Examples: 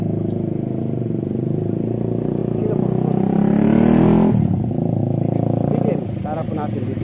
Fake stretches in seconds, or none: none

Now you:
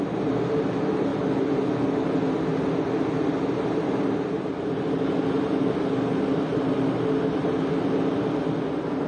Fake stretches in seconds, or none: none

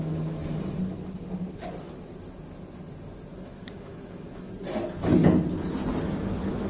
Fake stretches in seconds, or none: 3.3-4.5 (autoencoder, DAC-VAE)

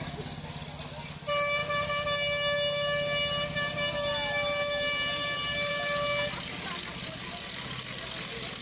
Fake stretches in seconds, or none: none

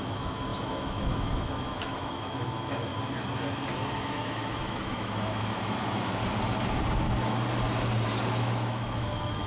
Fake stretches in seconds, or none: 0.0-2.9 (autoencoder, DAC-VAE); 3.9-6.2; 8.4-9.5

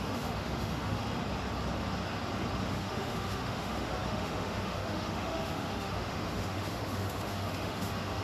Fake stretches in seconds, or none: 0.0-1.0 (autoencoder, DAC-VAE); 2.7-8.2

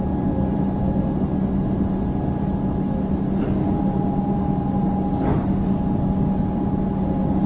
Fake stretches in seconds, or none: none